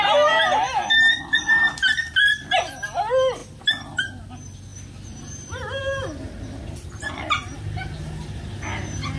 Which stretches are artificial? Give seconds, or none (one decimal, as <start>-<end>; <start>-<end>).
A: none